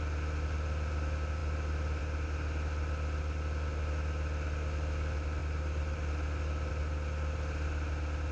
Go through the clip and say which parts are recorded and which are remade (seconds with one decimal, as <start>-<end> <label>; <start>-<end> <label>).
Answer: 0.0-8.3 recorded